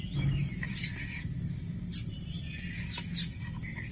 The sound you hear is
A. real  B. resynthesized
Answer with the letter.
A